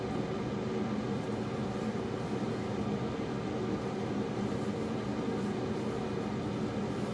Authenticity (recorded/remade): recorded